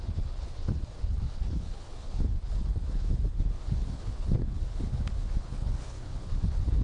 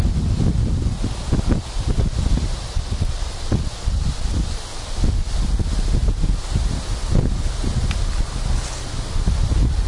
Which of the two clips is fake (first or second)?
first